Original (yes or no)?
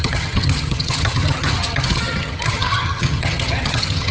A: no